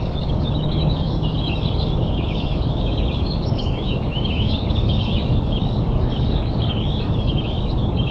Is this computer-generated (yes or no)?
yes